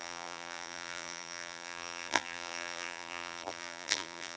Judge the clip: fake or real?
fake